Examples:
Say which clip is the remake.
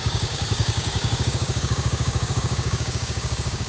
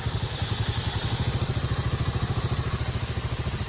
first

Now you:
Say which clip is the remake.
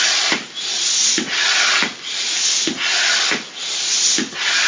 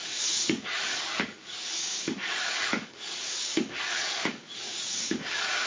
second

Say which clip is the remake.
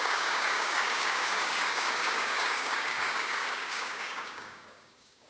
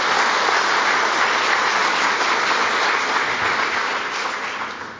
first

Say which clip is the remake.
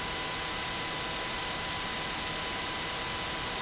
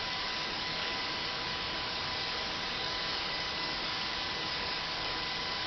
second